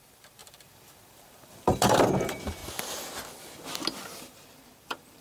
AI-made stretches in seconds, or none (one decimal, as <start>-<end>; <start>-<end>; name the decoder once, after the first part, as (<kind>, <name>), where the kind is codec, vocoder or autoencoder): 0.0-2.6 (vocoder, BigVGAN v2); 4.2-5.2